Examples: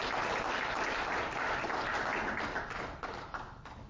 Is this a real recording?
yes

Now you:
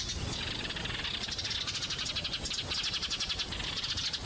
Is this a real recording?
yes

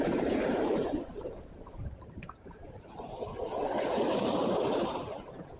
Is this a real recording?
no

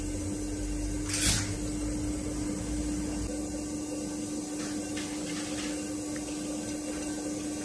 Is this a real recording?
yes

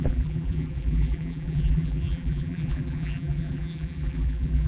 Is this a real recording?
no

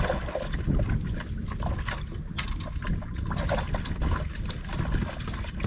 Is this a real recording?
yes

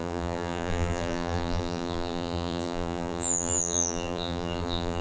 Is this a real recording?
no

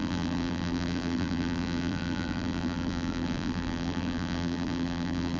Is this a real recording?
no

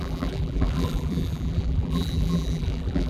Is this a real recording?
no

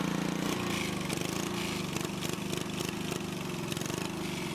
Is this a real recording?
yes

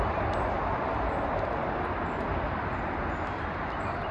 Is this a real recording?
yes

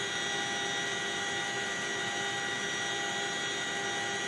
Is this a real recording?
yes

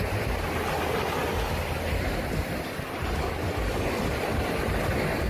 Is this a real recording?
yes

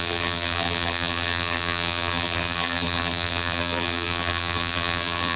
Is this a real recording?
no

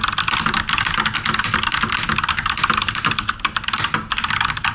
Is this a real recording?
yes